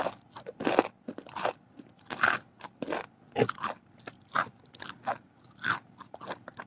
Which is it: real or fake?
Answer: real